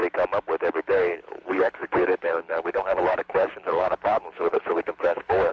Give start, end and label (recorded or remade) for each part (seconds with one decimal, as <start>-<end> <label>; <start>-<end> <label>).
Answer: 0.0-0.8 recorded; 0.8-5.5 remade